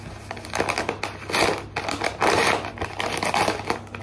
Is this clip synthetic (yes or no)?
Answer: no